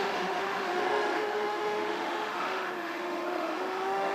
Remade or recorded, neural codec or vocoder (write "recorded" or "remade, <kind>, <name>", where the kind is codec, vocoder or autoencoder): remade, autoencoder, DAC-VAE